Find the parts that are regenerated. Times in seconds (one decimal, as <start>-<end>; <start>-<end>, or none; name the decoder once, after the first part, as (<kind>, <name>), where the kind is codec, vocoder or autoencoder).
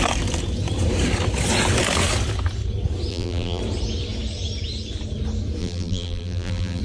3.1-3.6 (vocoder, BigVGAN v2); 5.6-6.8